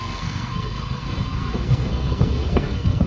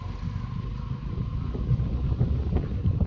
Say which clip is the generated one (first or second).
first